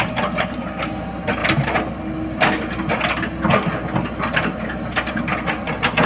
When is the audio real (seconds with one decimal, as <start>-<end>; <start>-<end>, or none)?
0.0-6.1